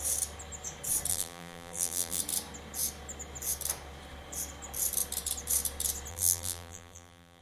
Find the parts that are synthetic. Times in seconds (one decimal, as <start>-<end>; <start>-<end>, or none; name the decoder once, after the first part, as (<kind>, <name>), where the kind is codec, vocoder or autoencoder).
1.1-2.2 (vocoder, BigVGAN v2); 6.1-7.4